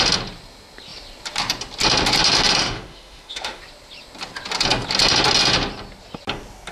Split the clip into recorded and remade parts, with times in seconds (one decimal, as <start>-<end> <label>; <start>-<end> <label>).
0.0-2.6 recorded; 2.6-3.6 remade; 3.6-6.7 recorded